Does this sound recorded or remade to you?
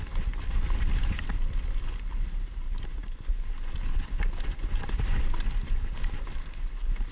recorded